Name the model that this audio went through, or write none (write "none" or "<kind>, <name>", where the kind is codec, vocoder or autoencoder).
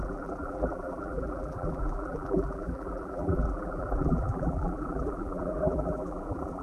vocoder, BigVGAN v2